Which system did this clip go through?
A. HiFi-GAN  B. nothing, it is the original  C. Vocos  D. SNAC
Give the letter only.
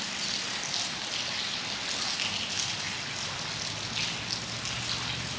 B